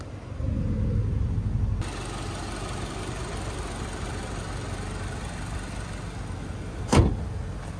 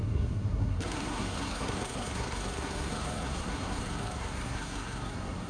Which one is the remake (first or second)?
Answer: second